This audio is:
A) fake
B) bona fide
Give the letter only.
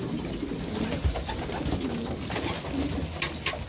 B